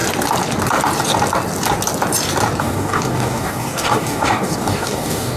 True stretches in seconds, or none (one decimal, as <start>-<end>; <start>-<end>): 0.0-2.6